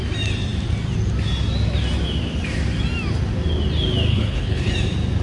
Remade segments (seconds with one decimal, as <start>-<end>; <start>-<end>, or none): 4.1-4.7